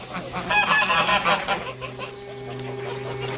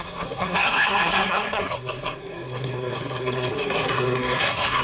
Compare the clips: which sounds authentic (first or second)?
first